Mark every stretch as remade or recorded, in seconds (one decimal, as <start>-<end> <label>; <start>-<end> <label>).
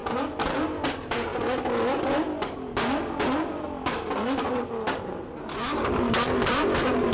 0.0-7.1 recorded